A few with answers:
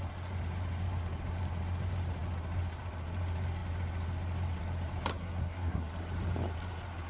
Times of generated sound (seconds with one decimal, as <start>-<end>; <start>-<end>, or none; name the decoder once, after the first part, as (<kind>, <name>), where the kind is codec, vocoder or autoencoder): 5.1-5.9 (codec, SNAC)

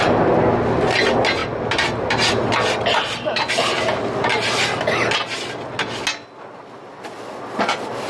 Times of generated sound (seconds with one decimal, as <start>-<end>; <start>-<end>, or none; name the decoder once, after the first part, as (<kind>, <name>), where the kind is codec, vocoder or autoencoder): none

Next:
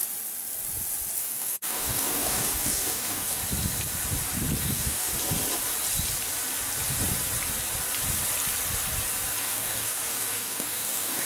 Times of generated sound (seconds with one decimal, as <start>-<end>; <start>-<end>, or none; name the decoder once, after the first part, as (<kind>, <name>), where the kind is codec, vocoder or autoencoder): 1.2-3.4 (codec, DAC); 4.6-5.1; 9.4-11.3

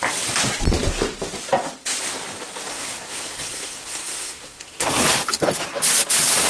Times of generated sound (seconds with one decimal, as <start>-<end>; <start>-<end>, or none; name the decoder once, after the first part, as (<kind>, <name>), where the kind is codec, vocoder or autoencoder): 2.7-5.0 (codec, SNAC)